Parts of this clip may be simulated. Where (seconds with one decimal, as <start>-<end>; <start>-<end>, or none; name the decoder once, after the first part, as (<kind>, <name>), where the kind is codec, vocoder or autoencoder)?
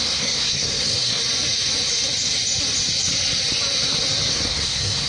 0.0-1.2 (codec, SNAC); 4.3-5.1